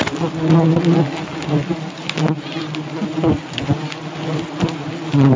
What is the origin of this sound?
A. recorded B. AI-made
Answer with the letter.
A